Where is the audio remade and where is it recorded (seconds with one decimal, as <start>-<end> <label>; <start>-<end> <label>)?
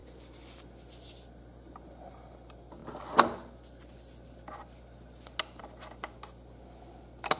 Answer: 0.0-7.4 recorded